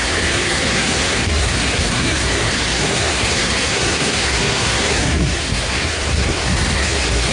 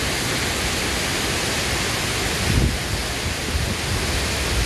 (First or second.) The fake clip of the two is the first